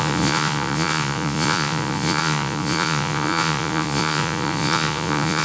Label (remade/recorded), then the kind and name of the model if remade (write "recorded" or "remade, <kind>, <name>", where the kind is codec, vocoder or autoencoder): remade, vocoder, Vocos